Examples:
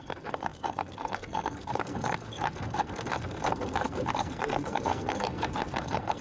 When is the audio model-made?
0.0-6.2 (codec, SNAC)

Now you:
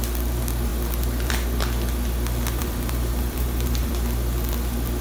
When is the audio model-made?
2.6-3.9 (vocoder, BigVGAN v2)

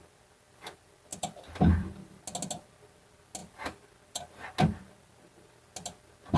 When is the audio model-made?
1.1-2.2 (vocoder, BigVGAN v2)

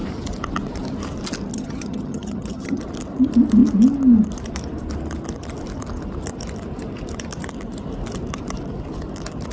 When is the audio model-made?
1.5-2.8 (vocoder, HiFi-GAN)